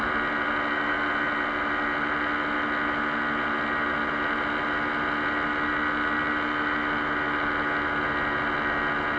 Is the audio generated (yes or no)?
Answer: no